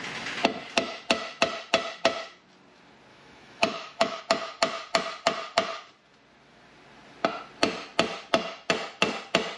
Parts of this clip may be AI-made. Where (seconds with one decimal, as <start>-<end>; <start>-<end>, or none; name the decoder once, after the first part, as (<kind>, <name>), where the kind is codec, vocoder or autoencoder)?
3.1-4.2 (autoencoder, DAC-VAE)